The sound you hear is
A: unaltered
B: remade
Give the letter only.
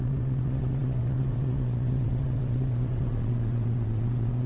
B